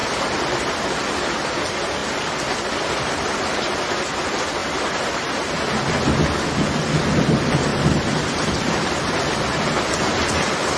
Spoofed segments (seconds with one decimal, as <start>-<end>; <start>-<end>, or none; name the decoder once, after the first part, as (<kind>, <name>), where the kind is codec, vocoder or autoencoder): 0.0-0.9 (vocoder, BigVGAN v2); 7.7-9.2